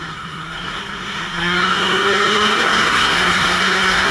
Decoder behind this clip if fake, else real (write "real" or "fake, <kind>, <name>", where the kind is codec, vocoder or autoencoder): fake, codec, SNAC